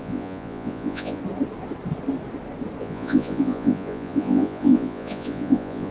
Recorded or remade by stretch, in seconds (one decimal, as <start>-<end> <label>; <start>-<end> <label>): 0.0-1.2 remade; 1.2-2.8 recorded; 2.8-5.9 remade